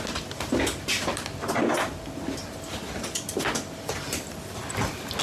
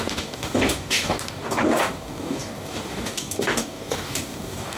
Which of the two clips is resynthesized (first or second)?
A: second